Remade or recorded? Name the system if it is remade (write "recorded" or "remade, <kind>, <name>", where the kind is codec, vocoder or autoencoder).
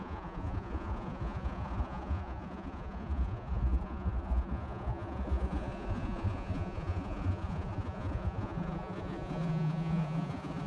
remade, vocoder, Vocos